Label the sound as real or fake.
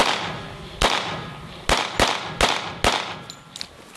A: real